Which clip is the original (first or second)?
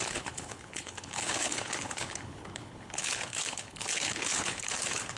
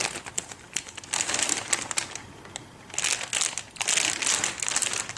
second